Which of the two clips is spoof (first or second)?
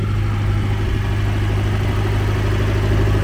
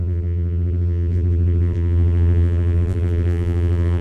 second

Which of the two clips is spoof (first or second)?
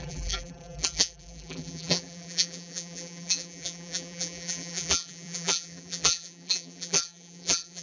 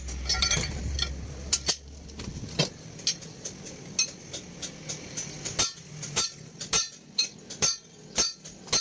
first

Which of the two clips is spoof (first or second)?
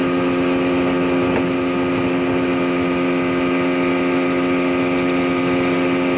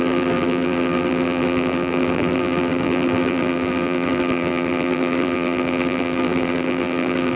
second